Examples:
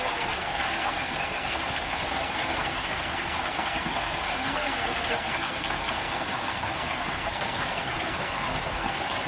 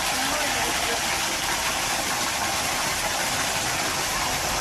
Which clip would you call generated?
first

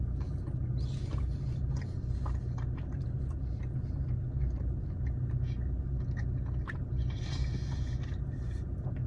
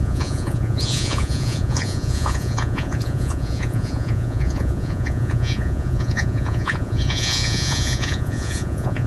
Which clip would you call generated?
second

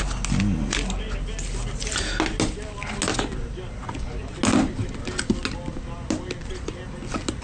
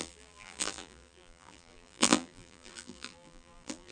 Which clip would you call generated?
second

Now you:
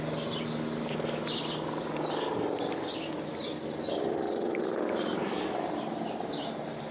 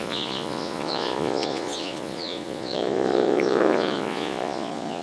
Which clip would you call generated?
second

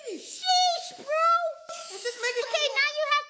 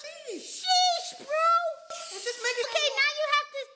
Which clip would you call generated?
first